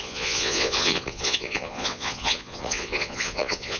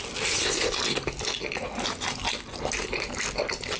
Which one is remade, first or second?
first